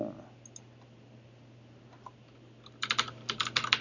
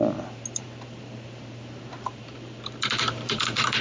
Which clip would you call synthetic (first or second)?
second